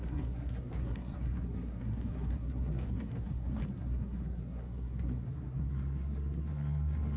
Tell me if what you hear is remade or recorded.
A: remade